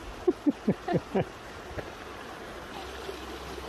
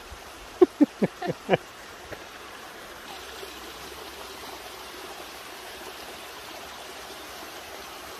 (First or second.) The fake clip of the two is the second